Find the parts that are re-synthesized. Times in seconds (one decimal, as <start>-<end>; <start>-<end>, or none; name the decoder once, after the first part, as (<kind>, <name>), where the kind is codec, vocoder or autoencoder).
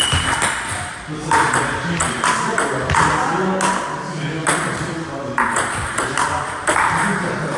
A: 4.4-7.6 (vocoder, BigVGAN v2)